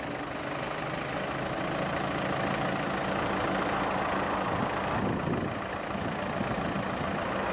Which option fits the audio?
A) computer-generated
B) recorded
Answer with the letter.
B